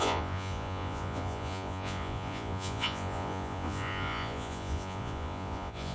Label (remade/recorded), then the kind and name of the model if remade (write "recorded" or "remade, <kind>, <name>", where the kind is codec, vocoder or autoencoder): remade, vocoder, Vocos